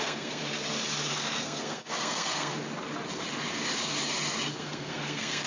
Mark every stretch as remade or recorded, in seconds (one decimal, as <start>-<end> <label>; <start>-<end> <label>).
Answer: 0.0-0.4 remade; 0.4-1.1 recorded; 1.1-2.5 remade; 2.5-4.5 recorded; 4.5-5.5 remade